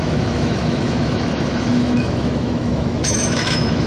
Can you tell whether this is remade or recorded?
remade